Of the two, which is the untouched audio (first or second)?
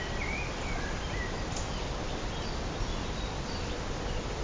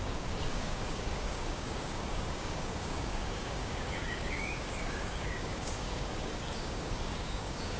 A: first